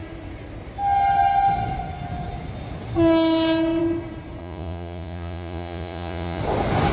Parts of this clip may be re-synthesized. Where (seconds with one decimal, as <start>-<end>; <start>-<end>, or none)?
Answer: 4.4-6.4